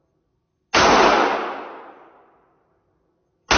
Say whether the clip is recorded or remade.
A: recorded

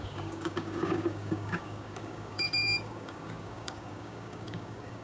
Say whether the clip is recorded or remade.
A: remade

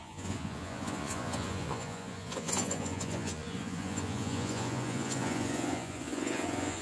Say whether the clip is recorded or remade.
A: remade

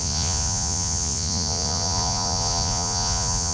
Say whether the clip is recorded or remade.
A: remade